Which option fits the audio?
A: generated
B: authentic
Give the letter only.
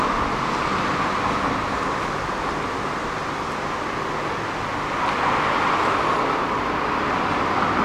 B